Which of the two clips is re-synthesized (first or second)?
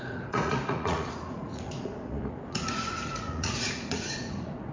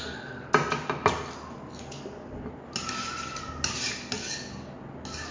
first